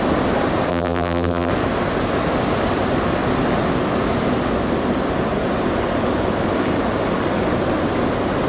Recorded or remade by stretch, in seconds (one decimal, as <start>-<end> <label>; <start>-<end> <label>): 0.0-0.7 recorded; 0.7-1.5 remade; 1.5-8.5 recorded